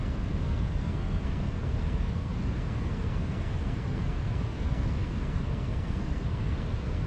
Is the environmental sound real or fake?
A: fake